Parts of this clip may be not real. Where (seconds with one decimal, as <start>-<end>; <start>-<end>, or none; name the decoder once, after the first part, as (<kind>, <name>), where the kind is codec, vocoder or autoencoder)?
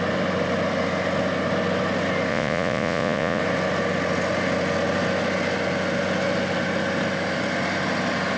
2.3-3.4 (vocoder, Vocos)